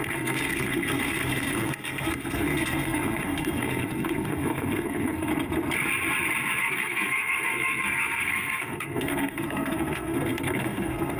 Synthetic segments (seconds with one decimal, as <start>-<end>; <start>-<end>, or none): 0.0-5.3; 6.6-11.2